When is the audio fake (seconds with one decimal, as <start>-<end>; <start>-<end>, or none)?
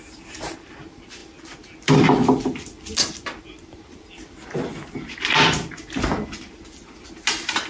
none